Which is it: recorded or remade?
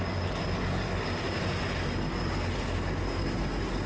recorded